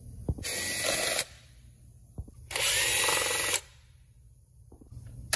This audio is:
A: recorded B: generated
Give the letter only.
A